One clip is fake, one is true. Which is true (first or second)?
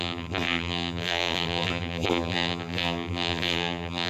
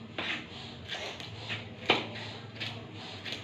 second